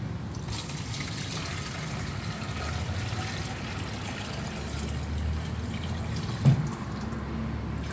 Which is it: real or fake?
real